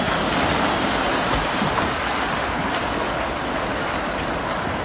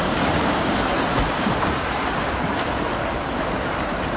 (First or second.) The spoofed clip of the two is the second